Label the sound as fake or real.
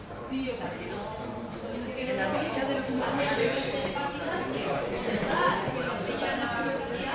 fake